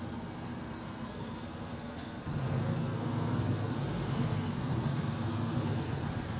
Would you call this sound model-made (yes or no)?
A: yes